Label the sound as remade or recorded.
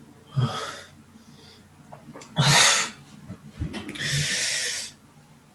recorded